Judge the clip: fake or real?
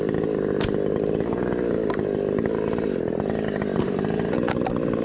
fake